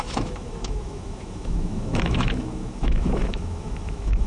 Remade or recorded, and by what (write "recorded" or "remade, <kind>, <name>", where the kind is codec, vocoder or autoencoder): remade, autoencoder, DAC-VAE